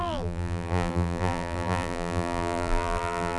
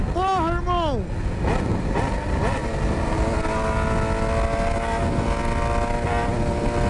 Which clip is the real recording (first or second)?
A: second